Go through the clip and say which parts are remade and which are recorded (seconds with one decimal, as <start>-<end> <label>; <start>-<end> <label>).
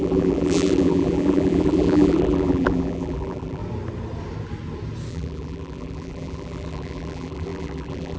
0.0-3.6 remade; 3.6-5.1 recorded; 5.1-8.2 remade